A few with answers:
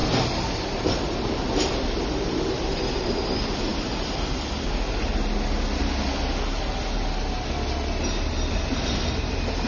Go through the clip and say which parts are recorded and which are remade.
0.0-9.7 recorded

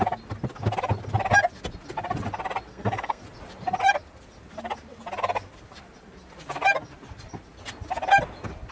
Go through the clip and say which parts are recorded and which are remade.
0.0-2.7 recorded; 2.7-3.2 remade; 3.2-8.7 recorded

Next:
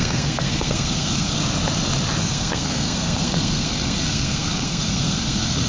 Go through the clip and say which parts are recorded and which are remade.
0.0-1.4 remade; 1.4-2.2 recorded; 2.2-5.7 remade